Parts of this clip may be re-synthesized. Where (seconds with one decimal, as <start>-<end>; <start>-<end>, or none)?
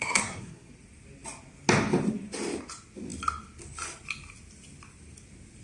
0.0-0.7